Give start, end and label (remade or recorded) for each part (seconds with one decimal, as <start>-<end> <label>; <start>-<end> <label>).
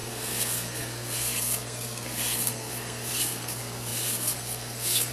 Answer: 0.0-5.1 remade